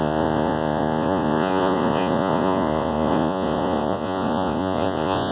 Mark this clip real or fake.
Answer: fake